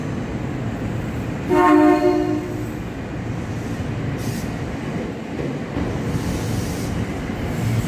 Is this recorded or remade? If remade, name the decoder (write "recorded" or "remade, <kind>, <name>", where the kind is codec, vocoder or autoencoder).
recorded